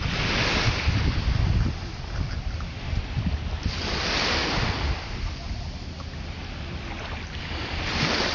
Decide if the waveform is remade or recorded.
recorded